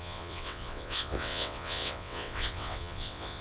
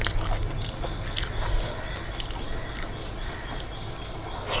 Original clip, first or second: second